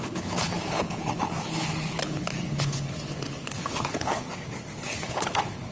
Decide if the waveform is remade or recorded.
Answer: remade